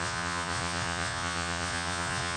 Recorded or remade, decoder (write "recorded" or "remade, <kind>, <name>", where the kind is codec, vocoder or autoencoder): remade, vocoder, Vocos